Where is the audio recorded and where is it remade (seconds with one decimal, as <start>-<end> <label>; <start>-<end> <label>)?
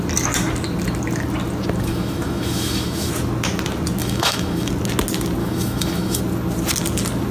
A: 0.0-1.9 recorded; 1.9-3.1 remade; 3.1-4.0 recorded; 4.0-4.7 remade; 4.7-5.4 recorded; 5.4-6.2 remade; 6.2-7.3 recorded